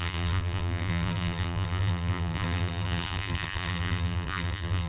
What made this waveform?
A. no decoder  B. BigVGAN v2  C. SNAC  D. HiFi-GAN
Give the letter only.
B